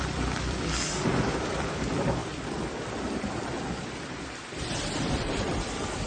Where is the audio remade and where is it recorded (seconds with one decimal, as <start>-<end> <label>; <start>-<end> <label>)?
0.0-6.1 remade